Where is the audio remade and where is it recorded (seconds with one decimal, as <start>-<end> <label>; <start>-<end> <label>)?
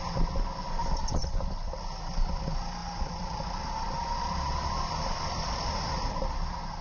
0.0-2.8 recorded; 2.8-5.7 remade; 5.7-6.8 recorded